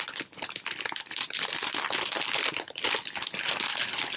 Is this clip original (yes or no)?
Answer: yes